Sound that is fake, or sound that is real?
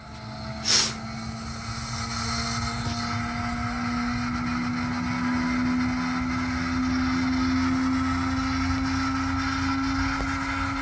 real